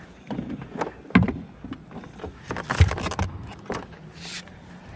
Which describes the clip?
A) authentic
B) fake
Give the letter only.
A